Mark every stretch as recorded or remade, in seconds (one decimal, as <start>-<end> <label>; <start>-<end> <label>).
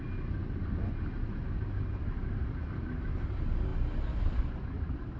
0.0-5.2 recorded